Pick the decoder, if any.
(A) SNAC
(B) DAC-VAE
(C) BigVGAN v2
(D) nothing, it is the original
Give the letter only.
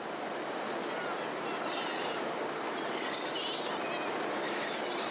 D